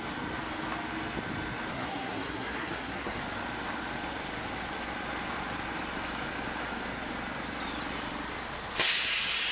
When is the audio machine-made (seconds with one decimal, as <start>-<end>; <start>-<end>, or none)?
1.7-3.2